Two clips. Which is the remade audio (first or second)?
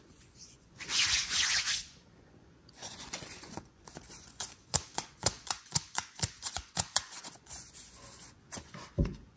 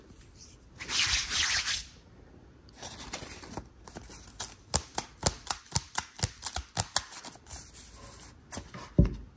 first